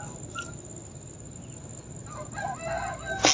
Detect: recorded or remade recorded